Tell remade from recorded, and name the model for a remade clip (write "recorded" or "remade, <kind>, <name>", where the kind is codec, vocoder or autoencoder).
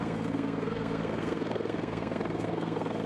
remade, codec, SNAC